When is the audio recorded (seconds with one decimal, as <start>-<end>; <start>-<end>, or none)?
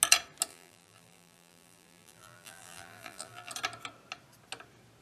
0.0-0.5; 3.5-5.0